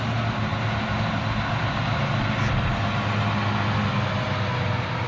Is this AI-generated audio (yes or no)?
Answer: no